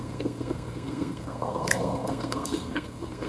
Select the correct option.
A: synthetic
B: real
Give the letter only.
A